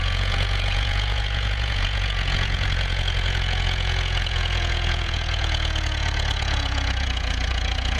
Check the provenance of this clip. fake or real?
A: fake